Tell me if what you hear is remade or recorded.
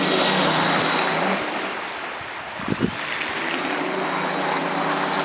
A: recorded